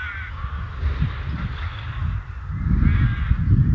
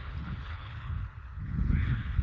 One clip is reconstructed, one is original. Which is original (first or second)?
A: first